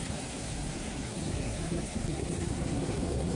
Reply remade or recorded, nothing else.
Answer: remade